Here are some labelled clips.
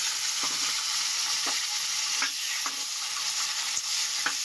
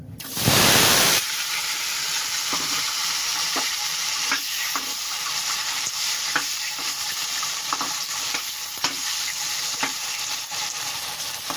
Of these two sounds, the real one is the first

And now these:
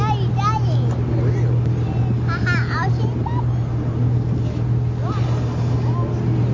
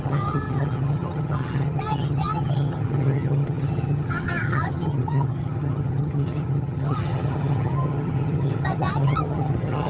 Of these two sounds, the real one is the first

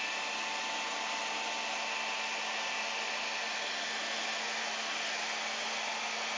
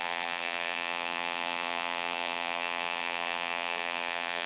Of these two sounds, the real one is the first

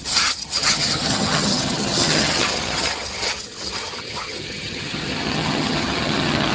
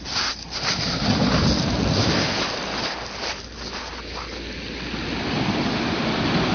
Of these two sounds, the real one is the second